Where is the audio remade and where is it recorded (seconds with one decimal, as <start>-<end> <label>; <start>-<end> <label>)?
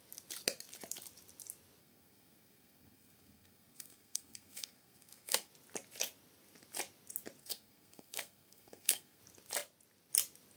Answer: 0.0-1.8 recorded; 1.8-5.5 remade; 5.5-7.4 recorded; 7.4-9.2 remade; 9.2-10.6 recorded